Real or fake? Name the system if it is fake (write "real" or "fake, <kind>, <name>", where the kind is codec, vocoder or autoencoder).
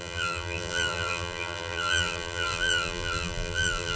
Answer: fake, vocoder, BigVGAN v2